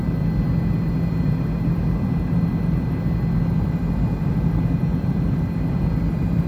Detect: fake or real real